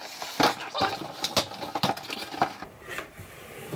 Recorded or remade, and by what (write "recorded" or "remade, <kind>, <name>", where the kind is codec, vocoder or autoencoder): recorded